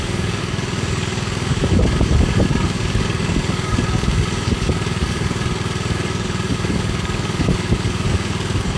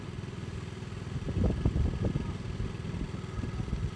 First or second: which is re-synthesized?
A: first